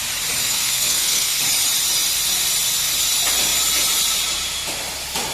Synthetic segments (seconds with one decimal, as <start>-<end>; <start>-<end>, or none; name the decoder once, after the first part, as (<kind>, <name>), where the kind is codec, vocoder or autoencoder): 0.4-1.4 (codec, SNAC)